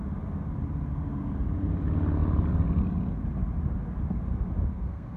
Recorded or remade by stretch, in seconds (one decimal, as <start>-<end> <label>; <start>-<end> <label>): 0.0-4.7 recorded; 4.7-5.2 remade